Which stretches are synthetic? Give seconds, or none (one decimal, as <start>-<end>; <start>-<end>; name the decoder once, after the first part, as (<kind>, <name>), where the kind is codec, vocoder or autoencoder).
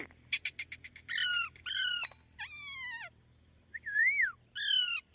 0.0-4.0 (vocoder, BigVGAN v2)